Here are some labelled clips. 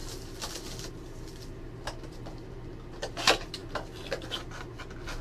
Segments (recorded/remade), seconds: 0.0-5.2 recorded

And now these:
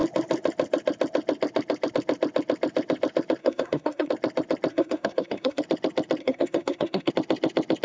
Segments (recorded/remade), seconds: 0.0-3.4 recorded; 3.4-4.1 remade; 4.1-4.7 recorded; 4.7-5.6 remade; 5.6-6.2 recorded; 6.2-7.1 remade; 7.1-7.8 recorded